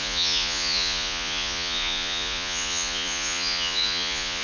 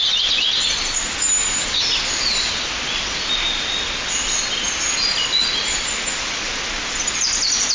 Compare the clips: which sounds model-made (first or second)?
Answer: first